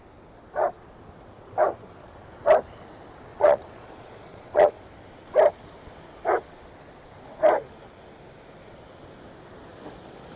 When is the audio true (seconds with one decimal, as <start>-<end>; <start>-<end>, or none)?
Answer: 0.0-3.3; 4.8-10.4